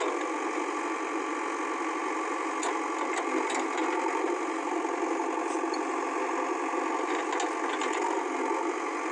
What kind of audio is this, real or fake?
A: real